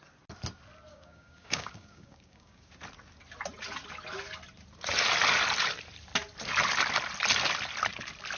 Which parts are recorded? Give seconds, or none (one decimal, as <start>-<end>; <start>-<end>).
0.0-0.9; 2.7-8.4